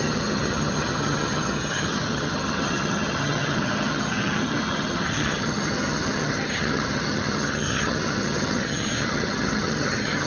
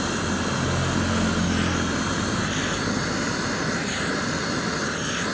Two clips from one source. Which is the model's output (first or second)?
first